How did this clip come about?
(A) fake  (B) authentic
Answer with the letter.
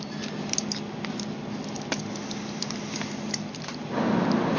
B